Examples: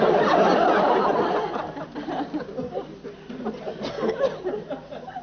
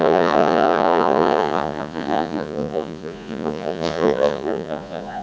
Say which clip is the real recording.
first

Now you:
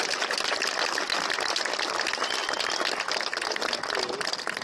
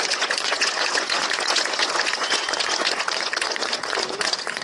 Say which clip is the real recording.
first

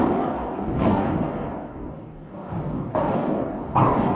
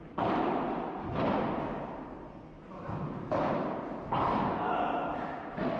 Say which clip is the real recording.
second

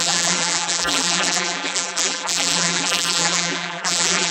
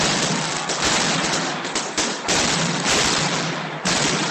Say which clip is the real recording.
second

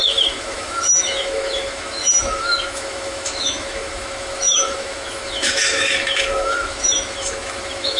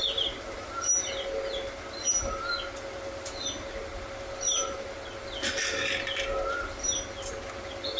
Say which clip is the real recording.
second